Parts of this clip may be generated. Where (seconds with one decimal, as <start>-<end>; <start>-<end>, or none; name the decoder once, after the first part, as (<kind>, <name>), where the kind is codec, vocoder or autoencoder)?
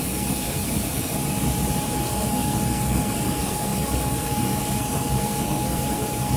0.0-1.2 (codec, SNAC); 2.0-6.4